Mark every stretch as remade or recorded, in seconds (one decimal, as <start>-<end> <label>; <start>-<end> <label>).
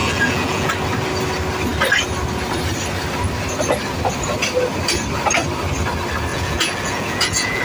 0.0-0.7 remade; 0.7-6.3 recorded; 6.3-7.6 remade